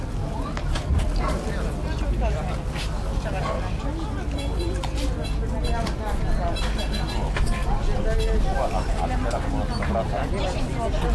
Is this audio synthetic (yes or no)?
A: no